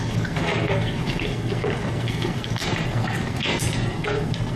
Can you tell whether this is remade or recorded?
remade